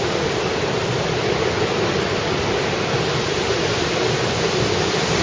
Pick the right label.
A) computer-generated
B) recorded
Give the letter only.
B